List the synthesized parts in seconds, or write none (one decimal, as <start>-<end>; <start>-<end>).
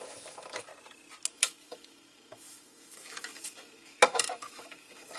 0.0-0.7; 1.3-5.2